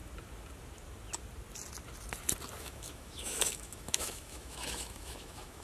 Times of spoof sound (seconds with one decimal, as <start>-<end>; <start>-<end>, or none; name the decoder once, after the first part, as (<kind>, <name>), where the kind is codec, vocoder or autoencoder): 2.6-5.6 (autoencoder, DAC-VAE)